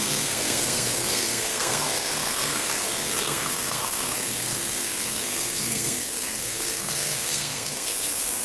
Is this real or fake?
fake